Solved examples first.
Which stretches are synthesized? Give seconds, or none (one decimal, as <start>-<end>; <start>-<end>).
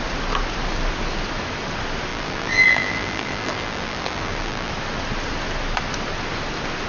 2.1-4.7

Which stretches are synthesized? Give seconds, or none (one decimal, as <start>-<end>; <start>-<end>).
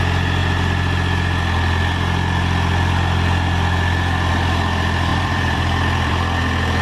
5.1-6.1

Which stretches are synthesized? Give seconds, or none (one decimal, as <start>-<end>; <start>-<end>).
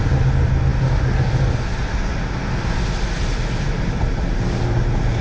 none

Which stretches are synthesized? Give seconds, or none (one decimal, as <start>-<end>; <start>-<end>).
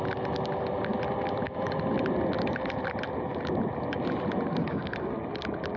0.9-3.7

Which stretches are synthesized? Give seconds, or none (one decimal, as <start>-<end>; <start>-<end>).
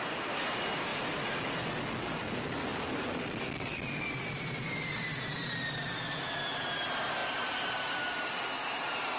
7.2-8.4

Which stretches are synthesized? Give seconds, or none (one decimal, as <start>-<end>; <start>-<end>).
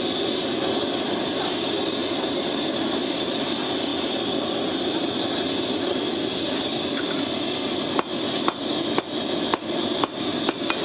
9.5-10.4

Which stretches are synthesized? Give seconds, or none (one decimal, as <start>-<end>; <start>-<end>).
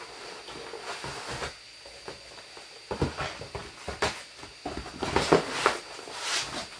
none